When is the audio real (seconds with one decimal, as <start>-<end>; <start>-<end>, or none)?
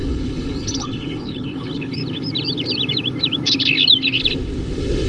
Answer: 2.0-5.1